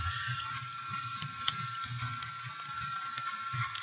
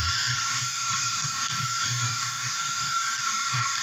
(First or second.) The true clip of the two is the first